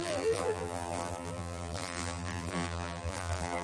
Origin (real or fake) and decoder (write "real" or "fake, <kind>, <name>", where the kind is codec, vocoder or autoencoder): fake, vocoder, BigVGAN v2